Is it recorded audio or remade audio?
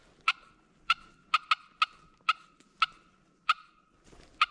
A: recorded